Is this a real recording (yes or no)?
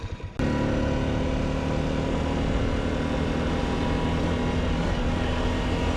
yes